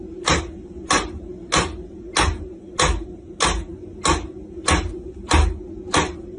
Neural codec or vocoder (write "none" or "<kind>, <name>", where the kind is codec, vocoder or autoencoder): none